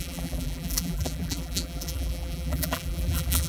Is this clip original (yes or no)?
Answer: no